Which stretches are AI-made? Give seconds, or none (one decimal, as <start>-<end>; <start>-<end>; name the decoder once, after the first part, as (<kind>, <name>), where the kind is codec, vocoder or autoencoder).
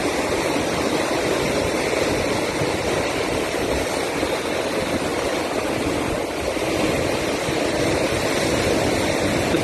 none